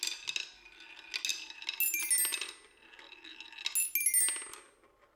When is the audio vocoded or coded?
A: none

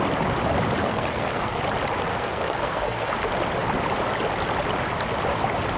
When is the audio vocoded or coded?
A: 0.8-1.6; 2.1-3.1

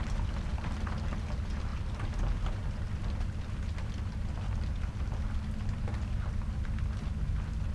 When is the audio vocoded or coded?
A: none

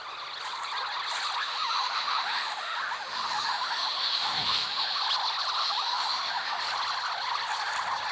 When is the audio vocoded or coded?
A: 1.4-5.0; 5.6-6.6